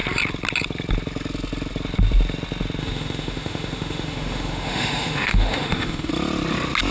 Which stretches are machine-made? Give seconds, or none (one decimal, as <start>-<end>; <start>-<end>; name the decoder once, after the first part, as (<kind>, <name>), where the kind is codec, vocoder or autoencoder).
2.8-6.1 (autoencoder, DAC-VAE)